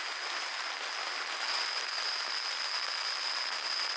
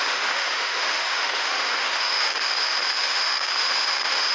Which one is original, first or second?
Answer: first